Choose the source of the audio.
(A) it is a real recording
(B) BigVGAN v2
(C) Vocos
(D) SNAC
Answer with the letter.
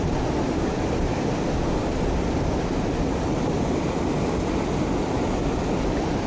A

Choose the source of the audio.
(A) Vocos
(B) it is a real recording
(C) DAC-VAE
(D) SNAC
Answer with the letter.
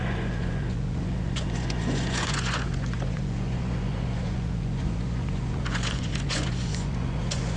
A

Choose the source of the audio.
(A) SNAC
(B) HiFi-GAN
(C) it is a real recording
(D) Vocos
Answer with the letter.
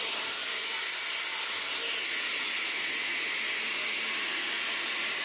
C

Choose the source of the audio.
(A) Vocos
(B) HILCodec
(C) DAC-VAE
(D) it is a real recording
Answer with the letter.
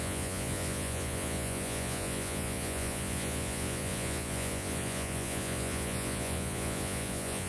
A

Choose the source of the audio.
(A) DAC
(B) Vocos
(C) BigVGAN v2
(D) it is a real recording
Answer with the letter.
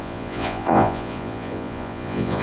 B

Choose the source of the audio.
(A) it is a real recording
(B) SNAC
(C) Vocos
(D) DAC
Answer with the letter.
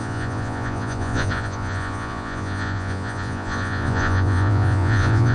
C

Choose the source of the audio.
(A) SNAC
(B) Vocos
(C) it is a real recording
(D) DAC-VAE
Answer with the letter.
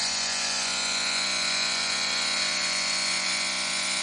B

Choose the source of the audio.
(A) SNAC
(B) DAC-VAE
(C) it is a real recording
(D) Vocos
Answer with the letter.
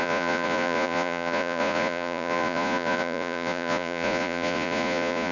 D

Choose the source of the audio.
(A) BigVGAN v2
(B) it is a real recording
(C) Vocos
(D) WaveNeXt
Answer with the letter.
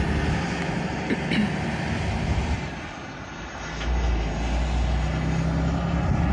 B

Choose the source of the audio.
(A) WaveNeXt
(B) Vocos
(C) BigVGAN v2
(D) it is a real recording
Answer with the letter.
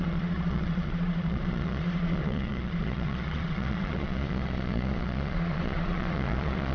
B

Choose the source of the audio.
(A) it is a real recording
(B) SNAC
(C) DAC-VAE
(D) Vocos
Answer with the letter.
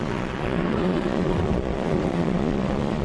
D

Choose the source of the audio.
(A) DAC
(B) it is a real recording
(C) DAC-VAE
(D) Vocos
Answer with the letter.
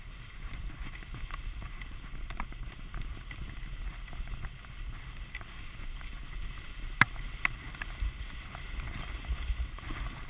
B